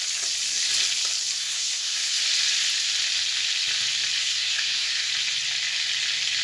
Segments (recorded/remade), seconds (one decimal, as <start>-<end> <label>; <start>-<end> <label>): 0.0-1.4 recorded; 1.4-2.2 remade; 2.2-4.2 recorded; 4.2-5.1 remade; 5.1-6.4 recorded